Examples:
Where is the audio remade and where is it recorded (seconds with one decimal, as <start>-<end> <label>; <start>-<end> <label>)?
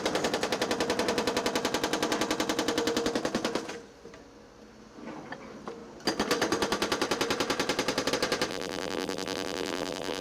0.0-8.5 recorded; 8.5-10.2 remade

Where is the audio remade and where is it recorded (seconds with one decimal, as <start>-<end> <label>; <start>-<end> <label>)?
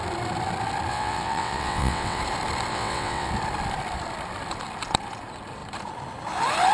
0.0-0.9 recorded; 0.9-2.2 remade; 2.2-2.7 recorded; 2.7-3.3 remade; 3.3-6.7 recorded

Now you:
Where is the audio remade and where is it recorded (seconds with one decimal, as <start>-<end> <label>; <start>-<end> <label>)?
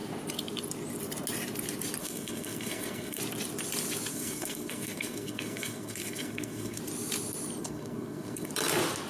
0.0-2.0 recorded; 2.0-3.2 remade; 3.2-4.1 recorded; 4.1-6.8 remade; 6.8-7.6 recorded; 7.6-8.5 remade; 8.5-9.1 recorded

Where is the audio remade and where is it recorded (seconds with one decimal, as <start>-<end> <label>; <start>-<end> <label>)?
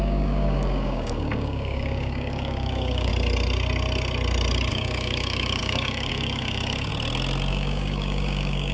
0.0-3.1 remade; 3.1-4.7 recorded; 4.7-6.9 remade; 6.9-7.5 recorded; 7.5-8.7 remade